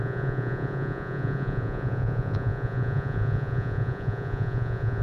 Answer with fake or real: fake